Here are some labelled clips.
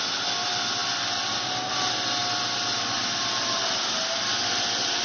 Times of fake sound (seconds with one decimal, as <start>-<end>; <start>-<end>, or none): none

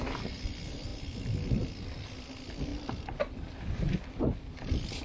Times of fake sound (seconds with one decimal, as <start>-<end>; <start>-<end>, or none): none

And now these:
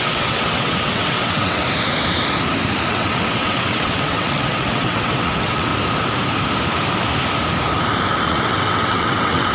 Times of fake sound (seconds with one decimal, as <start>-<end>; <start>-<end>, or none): 0.0-1.6; 2.9-5.7; 8.2-9.5